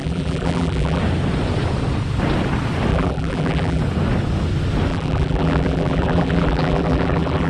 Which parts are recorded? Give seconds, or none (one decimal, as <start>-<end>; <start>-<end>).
1.0-2.9; 3.8-4.9